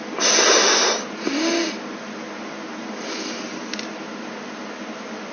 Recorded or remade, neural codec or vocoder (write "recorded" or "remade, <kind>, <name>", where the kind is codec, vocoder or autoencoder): recorded